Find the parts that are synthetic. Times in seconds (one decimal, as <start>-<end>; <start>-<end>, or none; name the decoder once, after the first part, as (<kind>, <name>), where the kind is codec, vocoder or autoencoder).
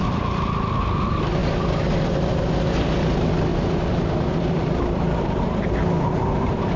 3.5-5.8 (vocoder, BigVGAN v2)